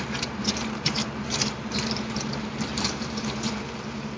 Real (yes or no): no